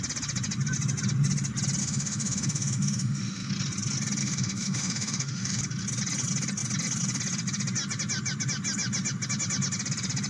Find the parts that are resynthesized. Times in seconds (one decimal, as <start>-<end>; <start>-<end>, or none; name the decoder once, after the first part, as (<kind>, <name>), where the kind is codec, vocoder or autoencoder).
1.8-3.5 (autoencoder, DAC-VAE); 4.2-5.6